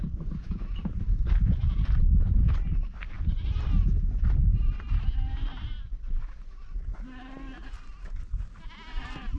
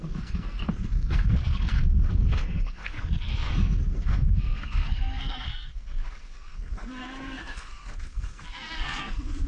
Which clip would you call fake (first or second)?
second